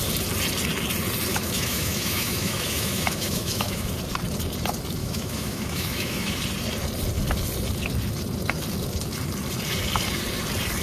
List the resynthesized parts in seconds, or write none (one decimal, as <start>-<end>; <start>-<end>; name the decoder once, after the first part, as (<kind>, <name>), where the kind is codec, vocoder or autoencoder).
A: 1.3-3.9 (autoencoder, DAC-VAE); 5.0-6.4